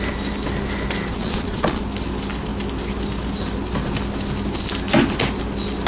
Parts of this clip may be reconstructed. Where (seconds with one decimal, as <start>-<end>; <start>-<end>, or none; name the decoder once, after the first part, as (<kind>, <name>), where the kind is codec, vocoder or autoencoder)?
1.2-1.8 (vocoder, Vocos)